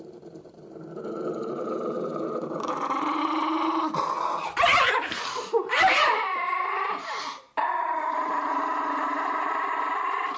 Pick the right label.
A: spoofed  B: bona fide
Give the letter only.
A